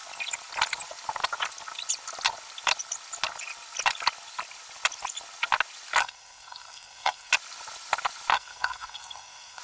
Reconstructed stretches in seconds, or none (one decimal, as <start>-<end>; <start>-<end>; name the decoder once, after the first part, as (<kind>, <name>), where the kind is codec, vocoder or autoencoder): 6.0-7.3 (codec, SNAC); 8.3-9.6